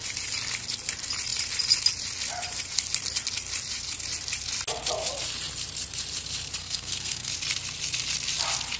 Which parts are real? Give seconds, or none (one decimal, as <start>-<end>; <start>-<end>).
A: 0.0-6.6; 7.3-8.8